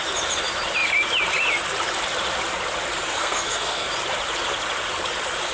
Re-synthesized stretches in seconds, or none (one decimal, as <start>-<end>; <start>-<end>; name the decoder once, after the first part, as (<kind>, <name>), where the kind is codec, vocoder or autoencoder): 3.1-3.9 (codec, SNAC)